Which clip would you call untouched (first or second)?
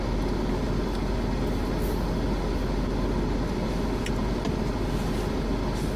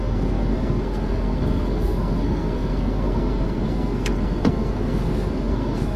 first